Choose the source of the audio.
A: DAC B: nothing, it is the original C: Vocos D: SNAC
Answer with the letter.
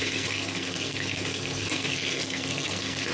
D